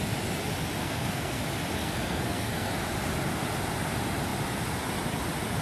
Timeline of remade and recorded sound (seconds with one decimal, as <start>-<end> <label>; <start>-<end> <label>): 0.0-0.8 recorded; 0.8-1.4 remade; 1.4-1.8 recorded; 1.8-2.7 remade; 2.7-5.6 recorded